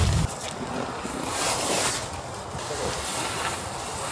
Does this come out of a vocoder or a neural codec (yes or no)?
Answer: no